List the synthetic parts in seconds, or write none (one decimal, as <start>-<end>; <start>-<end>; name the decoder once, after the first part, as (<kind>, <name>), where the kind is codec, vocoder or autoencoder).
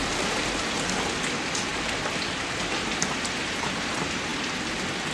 0.0-0.9 (vocoder, BigVGAN v2)